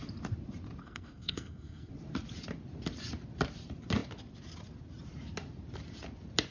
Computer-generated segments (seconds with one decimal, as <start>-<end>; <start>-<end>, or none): 0.8-1.9